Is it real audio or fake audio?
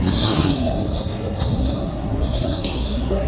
fake